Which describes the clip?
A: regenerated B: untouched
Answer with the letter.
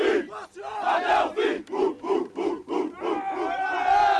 B